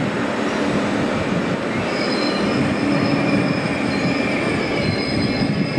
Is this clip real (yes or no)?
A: yes